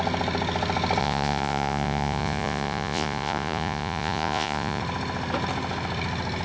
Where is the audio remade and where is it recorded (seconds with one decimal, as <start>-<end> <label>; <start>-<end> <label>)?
0.0-1.0 recorded; 1.0-4.8 remade; 4.8-6.4 recorded